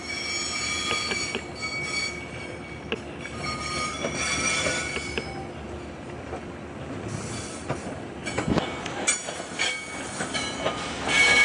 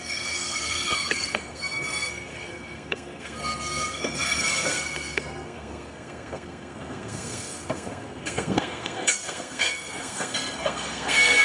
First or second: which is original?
first